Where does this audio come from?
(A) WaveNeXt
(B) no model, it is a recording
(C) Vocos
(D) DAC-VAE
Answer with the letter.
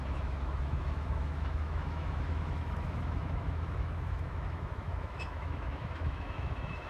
D